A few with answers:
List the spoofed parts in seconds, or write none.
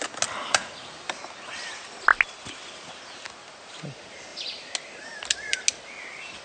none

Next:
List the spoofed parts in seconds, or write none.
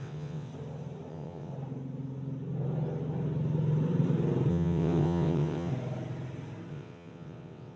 0.0-0.5 (vocoder, WaveNeXt); 1.1-1.5; 4.5-5.7; 6.7-7.8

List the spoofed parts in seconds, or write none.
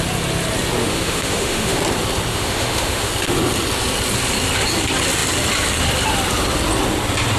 0.8-1.8 (autoencoder, DAC-VAE); 2.3-3.1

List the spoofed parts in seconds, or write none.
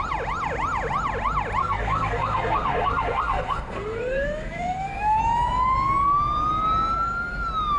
1.6-5.2 (codec, SNAC)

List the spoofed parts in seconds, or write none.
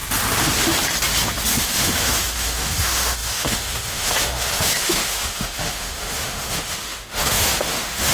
1.5-8.1 (autoencoder, DAC-VAE)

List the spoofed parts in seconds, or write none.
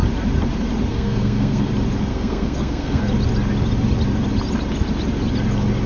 0.9-1.7 (codec, SNAC); 2.1-3.0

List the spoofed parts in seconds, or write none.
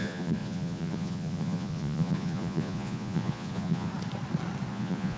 0.0-3.9 (vocoder, Vocos); 4.7-5.2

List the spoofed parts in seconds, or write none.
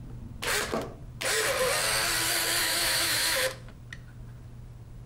2.6-3.7 (autoencoder, DAC-VAE)